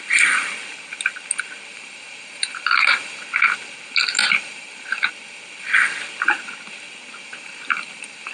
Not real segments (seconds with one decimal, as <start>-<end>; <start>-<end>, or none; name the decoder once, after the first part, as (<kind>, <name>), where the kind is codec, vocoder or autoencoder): 1.7-3.2 (vocoder, BigVGAN v2); 4.2-5.1; 7.3-8.3